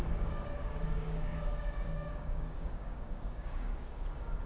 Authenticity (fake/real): fake